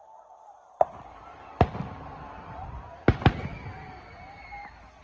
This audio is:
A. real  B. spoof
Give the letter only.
A